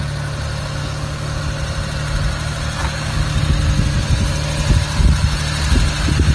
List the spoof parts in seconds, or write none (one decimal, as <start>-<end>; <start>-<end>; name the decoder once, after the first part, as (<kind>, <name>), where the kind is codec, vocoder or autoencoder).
0.8-1.4 (codec, DAC); 2.8-3.4